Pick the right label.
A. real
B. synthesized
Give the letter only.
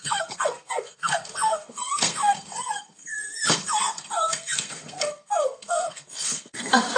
B